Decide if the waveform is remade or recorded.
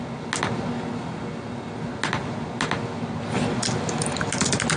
recorded